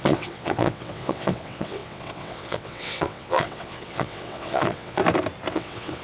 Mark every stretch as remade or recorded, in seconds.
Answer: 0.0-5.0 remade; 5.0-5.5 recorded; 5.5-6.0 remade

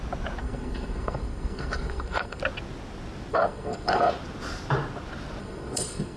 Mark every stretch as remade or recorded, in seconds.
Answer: 0.0-0.4 recorded; 0.4-2.4 remade; 2.4-3.3 recorded; 3.3-4.1 remade; 4.1-5.4 recorded; 5.4-6.2 remade

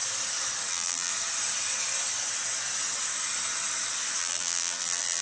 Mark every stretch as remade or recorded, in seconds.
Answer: 0.0-0.7 recorded; 0.7-1.1 remade; 1.1-4.2 recorded; 4.2-5.2 remade

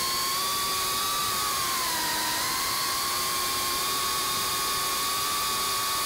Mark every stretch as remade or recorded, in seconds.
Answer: 0.0-1.2 recorded; 1.2-4.5 remade; 4.5-6.1 recorded

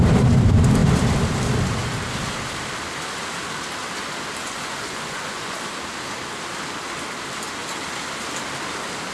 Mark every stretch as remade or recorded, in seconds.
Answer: 0.0-4.4 recorded; 4.4-5.6 remade; 5.6-9.1 recorded

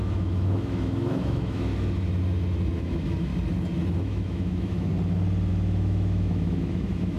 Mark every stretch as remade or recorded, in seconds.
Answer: 0.0-1.7 remade; 1.7-2.8 recorded; 2.8-3.3 remade; 3.3-4.0 recorded; 4.0-4.9 remade; 4.9-5.5 recorded; 5.5-7.2 remade

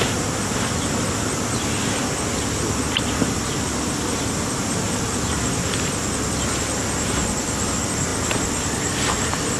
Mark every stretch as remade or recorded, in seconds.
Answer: 0.0-9.6 recorded

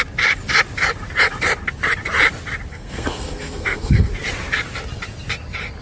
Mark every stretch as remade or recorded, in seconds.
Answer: 0.0-2.7 recorded; 2.7-4.1 remade; 4.1-5.8 recorded